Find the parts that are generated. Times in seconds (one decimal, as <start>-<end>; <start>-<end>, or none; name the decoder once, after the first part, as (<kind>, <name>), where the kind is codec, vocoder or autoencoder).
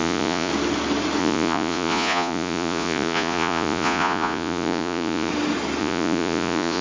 0.0-0.5 (vocoder, Vocos); 1.2-5.3; 5.8-6.8